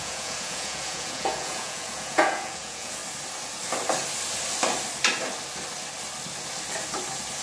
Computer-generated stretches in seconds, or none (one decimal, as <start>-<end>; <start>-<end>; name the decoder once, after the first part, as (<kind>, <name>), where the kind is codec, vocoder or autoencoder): 0.0-3.0 (vocoder, Vocos)